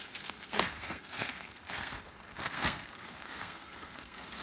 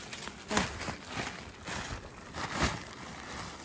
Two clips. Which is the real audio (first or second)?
second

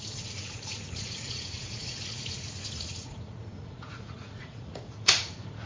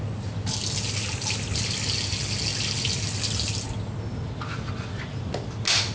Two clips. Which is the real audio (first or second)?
second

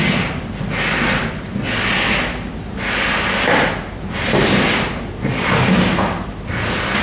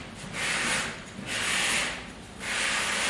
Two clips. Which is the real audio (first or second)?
first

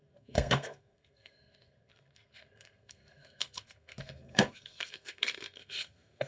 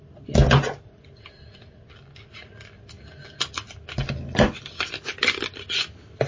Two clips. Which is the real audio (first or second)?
second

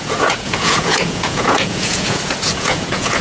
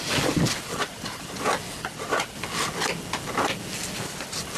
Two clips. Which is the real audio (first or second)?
second